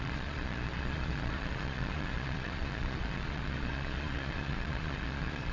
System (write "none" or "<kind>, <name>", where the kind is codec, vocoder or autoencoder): vocoder, Vocos